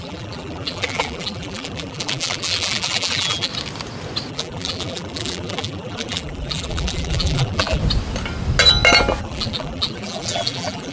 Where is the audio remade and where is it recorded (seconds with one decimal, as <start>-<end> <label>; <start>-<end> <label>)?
0.0-3.5 remade; 3.5-4.3 recorded; 4.3-7.8 remade; 7.8-9.2 recorded; 9.2-10.9 remade